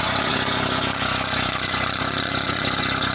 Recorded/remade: remade